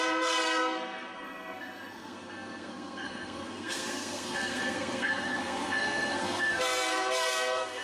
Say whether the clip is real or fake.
fake